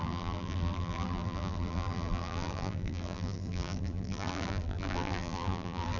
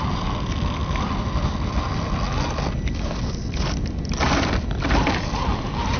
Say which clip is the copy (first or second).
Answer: first